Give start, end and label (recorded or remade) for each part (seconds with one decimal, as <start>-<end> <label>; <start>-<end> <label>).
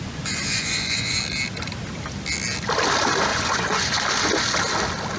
0.0-1.2 remade; 1.2-3.3 recorded; 3.3-4.0 remade; 4.0-5.2 recorded